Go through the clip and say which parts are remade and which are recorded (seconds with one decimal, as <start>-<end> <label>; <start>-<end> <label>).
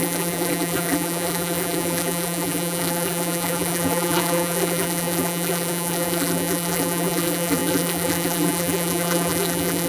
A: 0.0-9.9 remade